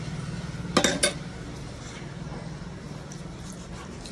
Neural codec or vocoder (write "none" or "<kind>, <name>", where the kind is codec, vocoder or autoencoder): none